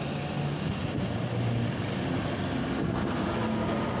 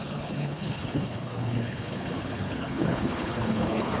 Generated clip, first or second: second